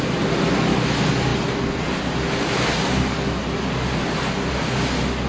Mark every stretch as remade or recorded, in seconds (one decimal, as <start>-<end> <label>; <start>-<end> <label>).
0.0-5.3 recorded